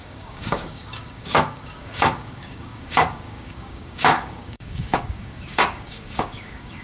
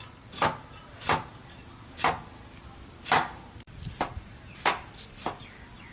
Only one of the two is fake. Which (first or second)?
first